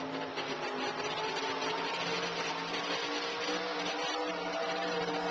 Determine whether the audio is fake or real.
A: real